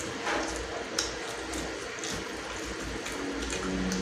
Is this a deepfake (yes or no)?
no